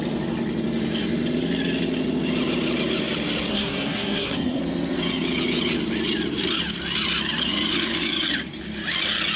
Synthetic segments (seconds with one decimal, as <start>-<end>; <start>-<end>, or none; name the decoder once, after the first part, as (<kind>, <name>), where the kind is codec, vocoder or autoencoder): 3.5-4.6 (codec, SNAC)